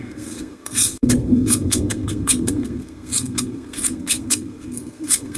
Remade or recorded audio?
remade